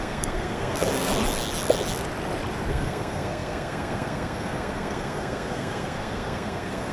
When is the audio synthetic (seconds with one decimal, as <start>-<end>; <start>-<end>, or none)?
0.0-1.1; 2.7-6.9